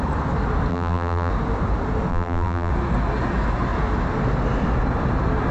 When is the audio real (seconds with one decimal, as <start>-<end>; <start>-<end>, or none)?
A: 0.0-0.7; 1.3-2.1; 2.7-5.5